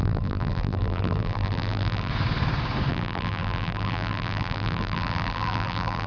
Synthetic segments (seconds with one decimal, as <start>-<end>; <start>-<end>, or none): 0.0-2.1; 2.9-6.1

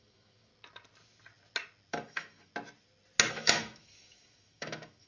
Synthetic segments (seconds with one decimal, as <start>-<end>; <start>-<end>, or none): 0.0-0.5; 1.9-2.5; 3.3-5.1

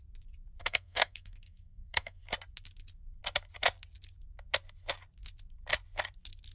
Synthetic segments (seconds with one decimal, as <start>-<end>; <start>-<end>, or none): 0.6-2.2